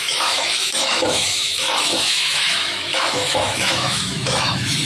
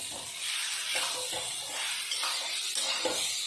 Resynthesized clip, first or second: first